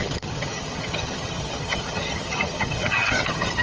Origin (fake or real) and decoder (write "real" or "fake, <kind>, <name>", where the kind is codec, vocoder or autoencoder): fake, vocoder, HiFi-GAN